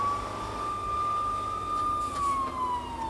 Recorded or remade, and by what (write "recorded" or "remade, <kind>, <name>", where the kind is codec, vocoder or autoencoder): recorded